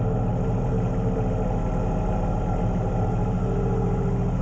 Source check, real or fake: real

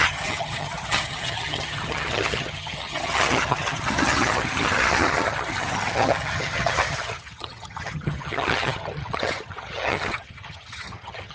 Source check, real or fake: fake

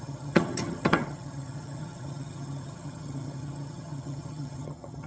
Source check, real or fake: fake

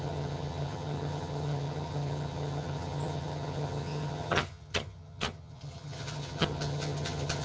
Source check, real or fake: fake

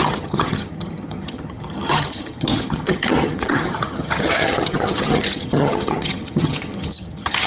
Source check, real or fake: fake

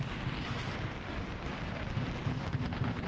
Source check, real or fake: real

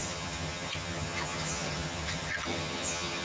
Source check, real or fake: fake